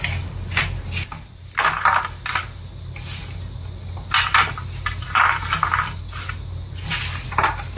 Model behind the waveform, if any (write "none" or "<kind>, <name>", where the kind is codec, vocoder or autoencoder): none